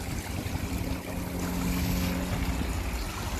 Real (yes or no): yes